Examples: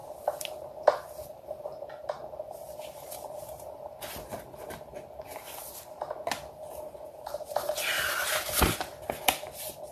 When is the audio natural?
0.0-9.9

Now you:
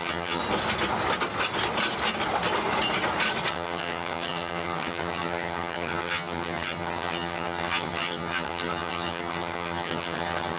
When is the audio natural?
0.4-3.5

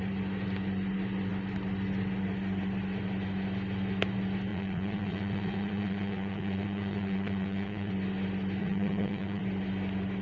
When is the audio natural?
0.0-4.5; 7.9-8.6; 9.4-10.2

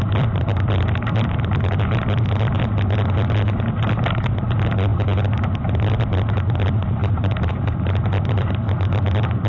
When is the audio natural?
0.0-7.0; 7.5-9.5

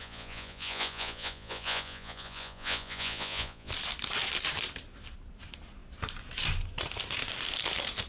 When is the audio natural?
3.7-8.1

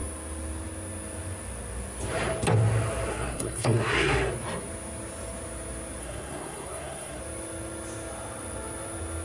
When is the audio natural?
0.0-3.1; 4.3-6.0; 7.2-9.2

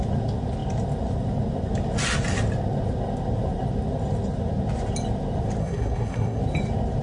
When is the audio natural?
0.0-5.6; 6.4-7.0